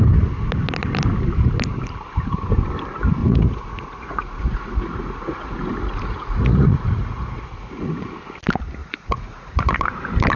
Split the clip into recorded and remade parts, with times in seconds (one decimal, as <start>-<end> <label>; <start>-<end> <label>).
0.0-3.2 recorded; 3.2-8.1 remade; 8.1-8.8 recorded; 8.8-9.8 remade; 9.8-10.4 recorded